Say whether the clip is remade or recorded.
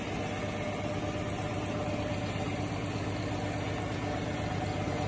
recorded